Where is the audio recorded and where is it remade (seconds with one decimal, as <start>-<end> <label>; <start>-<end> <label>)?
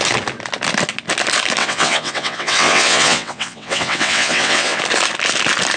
0.0-1.6 recorded; 1.6-4.8 remade; 4.8-5.8 recorded